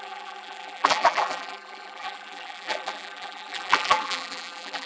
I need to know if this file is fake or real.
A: fake